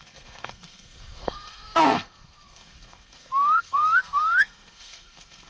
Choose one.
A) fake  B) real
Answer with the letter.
A